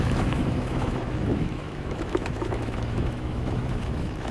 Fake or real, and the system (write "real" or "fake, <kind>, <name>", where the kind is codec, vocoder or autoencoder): fake, autoencoder, DAC-VAE